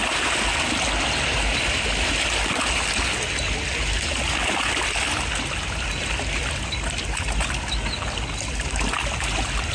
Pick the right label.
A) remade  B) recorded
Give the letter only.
B